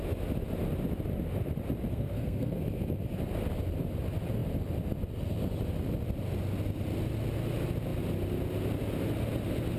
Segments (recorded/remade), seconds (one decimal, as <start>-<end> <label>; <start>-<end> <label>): 0.0-1.9 recorded; 1.9-2.6 remade; 2.6-9.8 recorded